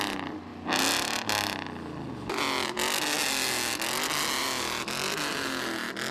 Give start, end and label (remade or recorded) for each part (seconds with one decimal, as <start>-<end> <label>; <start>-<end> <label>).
0.0-4.4 recorded; 4.4-5.2 remade; 5.2-6.1 recorded